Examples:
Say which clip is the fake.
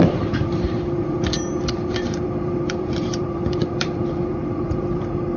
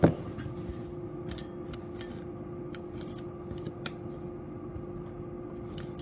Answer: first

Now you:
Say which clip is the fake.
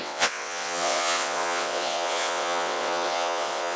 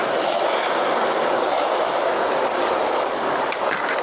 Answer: first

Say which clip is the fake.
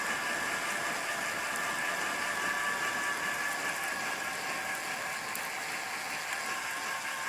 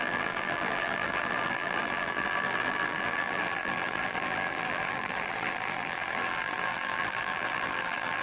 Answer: second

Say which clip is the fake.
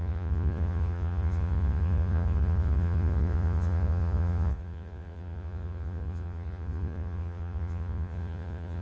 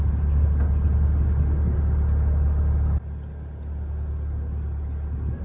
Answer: first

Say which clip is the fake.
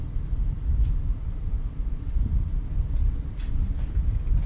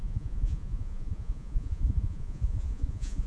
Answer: second